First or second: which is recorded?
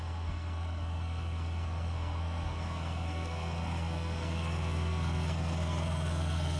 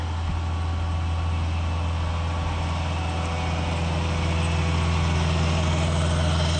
second